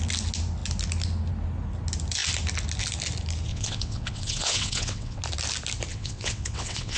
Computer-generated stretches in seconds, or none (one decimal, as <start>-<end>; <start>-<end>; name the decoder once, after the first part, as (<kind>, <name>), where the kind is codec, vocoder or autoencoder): 3.5-5.2 (vocoder, WaveNeXt); 5.9-7.0